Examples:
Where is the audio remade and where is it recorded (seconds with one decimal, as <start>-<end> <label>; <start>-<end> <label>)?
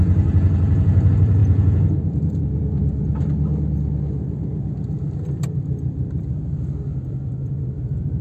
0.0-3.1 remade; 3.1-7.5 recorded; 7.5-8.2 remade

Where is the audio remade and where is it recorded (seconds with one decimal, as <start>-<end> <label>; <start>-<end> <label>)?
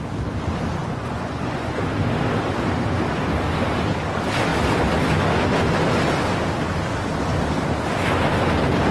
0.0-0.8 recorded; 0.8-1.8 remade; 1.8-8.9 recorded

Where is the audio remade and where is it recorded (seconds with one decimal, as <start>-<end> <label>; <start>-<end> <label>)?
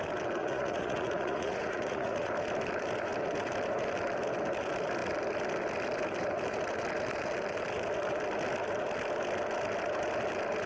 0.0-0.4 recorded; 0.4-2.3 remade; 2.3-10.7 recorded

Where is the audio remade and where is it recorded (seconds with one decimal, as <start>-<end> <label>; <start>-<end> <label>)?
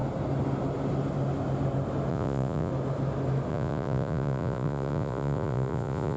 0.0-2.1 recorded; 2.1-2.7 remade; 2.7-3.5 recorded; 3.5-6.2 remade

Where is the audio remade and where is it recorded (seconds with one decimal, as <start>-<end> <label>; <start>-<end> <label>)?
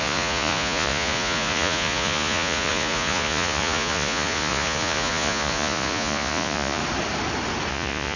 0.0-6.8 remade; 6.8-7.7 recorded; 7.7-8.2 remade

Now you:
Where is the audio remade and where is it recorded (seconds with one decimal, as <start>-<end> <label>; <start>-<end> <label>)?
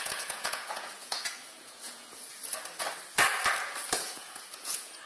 0.0-2.4 remade; 2.4-4.0 recorded; 4.0-5.1 remade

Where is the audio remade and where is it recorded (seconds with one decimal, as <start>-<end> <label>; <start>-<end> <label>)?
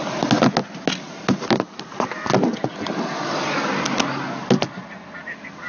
0.0-5.7 recorded